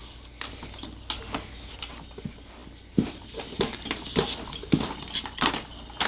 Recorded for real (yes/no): yes